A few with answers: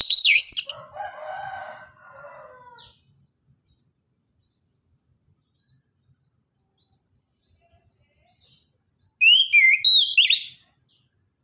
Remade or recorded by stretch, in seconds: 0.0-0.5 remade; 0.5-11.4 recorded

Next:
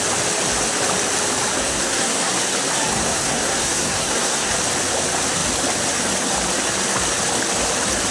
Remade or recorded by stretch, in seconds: 0.0-1.6 recorded; 1.6-2.3 remade; 2.3-2.9 recorded; 2.9-4.5 remade; 4.5-8.1 recorded

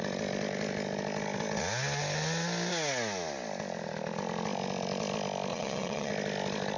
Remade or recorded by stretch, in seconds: 0.0-5.5 recorded; 5.5-6.1 remade; 6.1-6.8 recorded

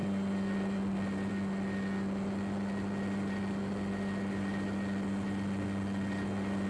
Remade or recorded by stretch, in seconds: 0.0-6.7 recorded

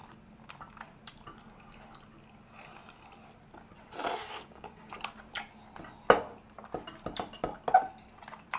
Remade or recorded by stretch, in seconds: 0.0-4.2 recorded; 4.2-4.9 remade; 4.9-8.6 recorded

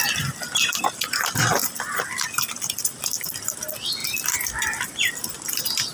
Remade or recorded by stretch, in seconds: 0.0-1.6 recorded; 1.6-3.1 remade; 3.1-4.0 recorded; 4.0-5.1 remade; 5.1-5.9 recorded

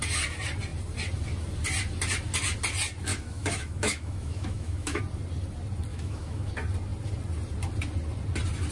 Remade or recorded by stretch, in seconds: 0.0-3.1 recorded; 3.1-5.0 remade; 5.0-5.9 recorded; 5.9-6.5 remade; 6.5-8.7 recorded